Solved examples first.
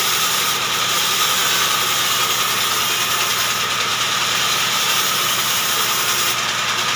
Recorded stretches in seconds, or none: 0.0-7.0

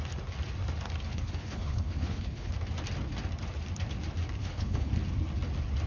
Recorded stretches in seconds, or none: 0.0-1.1; 2.5-4.4; 4.9-5.9

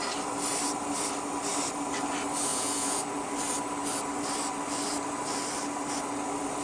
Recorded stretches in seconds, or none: 0.0-2.5; 3.0-6.6